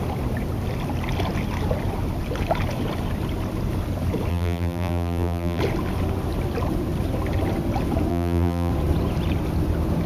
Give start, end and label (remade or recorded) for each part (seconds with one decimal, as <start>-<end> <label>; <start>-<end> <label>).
0.0-4.3 recorded; 4.3-5.6 remade; 5.6-8.1 recorded; 8.1-8.7 remade; 8.7-10.1 recorded